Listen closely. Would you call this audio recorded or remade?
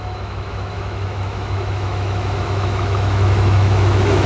remade